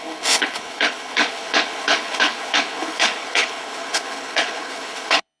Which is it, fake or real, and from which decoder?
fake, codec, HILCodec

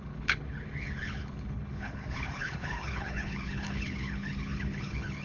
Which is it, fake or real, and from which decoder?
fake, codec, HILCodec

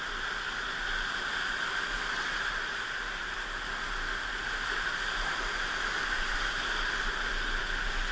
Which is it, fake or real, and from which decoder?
real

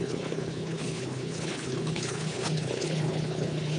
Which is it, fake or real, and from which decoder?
fake, codec, HILCodec